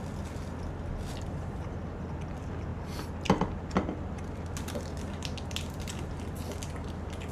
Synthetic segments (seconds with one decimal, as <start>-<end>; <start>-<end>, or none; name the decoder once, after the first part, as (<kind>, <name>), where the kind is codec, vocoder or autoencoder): none